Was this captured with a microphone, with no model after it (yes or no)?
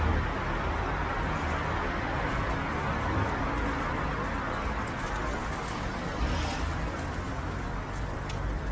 yes